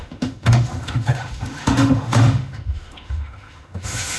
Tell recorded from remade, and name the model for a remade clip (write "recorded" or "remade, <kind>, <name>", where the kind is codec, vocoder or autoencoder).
remade, autoencoder, DAC-VAE